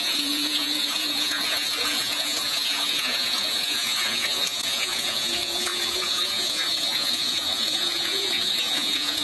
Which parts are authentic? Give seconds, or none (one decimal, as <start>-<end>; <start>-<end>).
none